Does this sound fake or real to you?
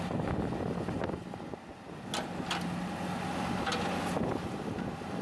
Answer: real